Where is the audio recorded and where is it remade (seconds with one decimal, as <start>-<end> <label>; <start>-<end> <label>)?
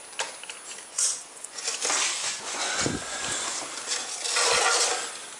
0.0-0.9 recorded; 0.9-1.6 remade; 1.6-2.2 recorded; 2.2-3.6 remade; 3.6-5.4 recorded